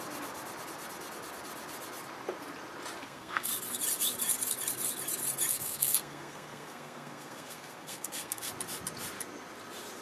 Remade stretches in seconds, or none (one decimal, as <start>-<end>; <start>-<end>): 3.0-3.5; 5.5-8.5